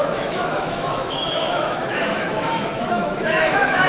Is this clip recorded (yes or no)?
no